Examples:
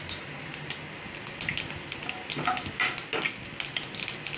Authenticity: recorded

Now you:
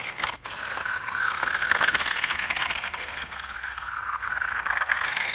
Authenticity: remade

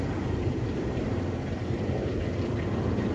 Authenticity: recorded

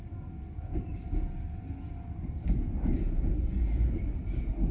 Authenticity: recorded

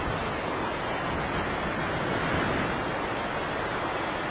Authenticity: recorded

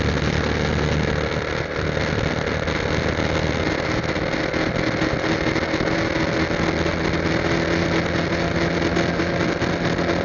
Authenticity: recorded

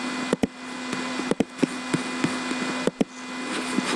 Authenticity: recorded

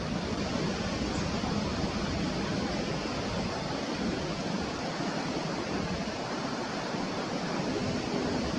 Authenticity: recorded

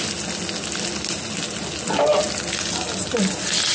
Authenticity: recorded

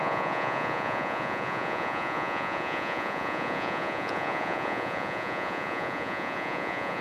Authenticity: remade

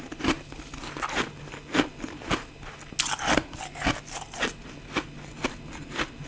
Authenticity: recorded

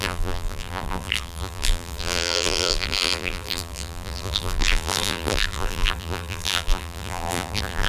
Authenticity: remade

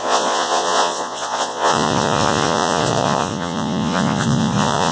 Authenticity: remade